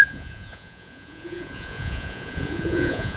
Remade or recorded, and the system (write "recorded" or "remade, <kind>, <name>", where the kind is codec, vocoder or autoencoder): remade, vocoder, Vocos